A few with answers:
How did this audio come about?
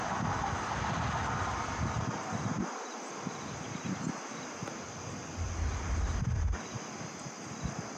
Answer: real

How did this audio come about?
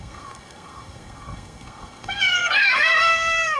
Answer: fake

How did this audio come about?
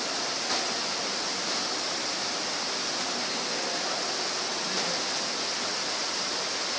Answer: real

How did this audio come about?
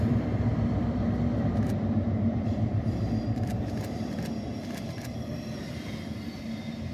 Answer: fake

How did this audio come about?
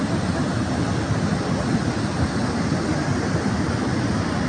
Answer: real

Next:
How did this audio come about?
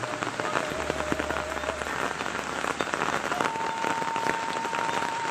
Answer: real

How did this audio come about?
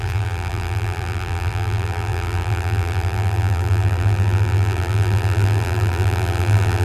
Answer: fake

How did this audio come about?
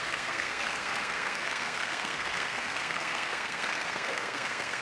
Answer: fake